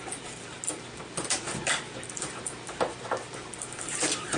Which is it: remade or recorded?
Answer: recorded